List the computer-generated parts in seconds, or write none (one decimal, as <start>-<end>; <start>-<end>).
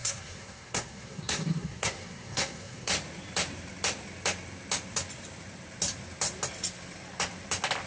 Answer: 0.0-2.9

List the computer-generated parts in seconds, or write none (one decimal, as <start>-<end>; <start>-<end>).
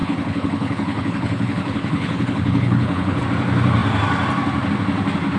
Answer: 0.0-3.2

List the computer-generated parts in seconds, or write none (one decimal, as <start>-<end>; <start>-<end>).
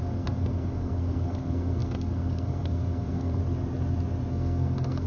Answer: 0.0-3.4; 4.3-5.1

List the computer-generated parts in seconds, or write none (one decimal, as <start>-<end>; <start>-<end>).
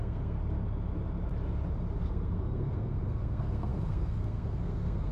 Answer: 0.0-0.4; 2.0-5.1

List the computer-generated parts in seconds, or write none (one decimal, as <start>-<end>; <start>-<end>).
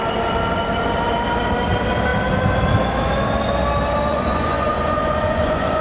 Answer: 4.1-5.8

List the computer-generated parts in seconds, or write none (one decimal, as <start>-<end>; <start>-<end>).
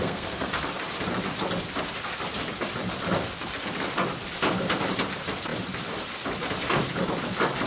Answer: 0.0-0.5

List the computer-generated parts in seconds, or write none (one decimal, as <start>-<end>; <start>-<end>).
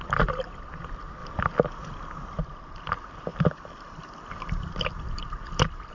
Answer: 1.2-2.4; 3.3-5.9